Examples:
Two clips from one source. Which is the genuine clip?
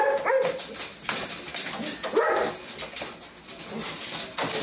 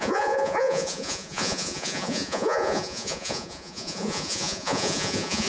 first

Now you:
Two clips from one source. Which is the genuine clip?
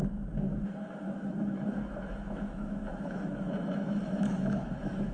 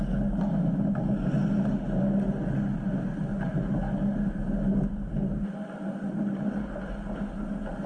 second